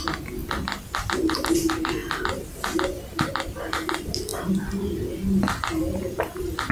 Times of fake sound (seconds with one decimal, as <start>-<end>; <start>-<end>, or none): none